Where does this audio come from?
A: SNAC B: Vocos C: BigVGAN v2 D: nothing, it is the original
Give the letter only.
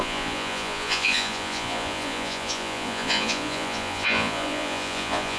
B